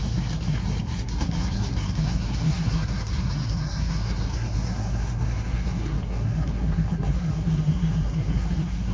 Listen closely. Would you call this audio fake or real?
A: fake